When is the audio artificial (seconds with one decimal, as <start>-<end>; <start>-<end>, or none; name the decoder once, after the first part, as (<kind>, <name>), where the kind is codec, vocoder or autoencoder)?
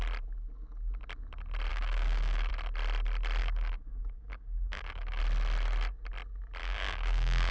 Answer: 1.7-2.5 (codec, DAC); 3.4-5.2; 6.6-7.5